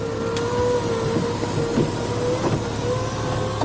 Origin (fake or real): real